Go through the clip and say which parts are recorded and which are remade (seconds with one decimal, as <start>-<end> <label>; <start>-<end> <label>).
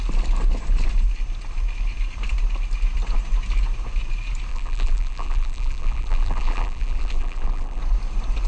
0.0-4.5 recorded; 4.5-7.8 remade; 7.8-8.5 recorded